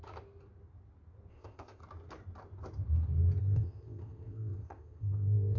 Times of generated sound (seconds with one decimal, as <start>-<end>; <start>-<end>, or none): 1.3-1.8; 3.4-5.6